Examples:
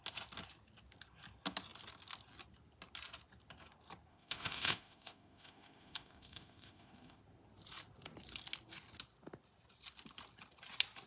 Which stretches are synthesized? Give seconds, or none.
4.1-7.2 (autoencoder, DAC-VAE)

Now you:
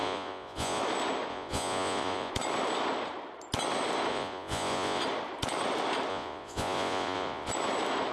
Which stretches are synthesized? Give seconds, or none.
0.0-0.8 (vocoder, Vocos); 1.3-2.3; 4.1-5.0; 6.1-7.5

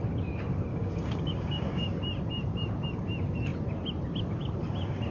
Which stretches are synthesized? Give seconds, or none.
0.7-2.0 (codec, DAC)

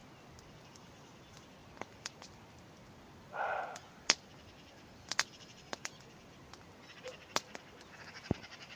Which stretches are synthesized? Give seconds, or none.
0.7-8.8 (vocoder, BigVGAN v2)

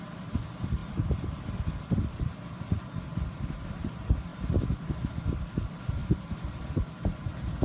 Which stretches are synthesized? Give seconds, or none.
0.0-4.3 (vocoder, BigVGAN v2); 5.3-7.6